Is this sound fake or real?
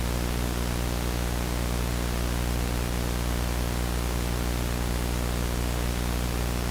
real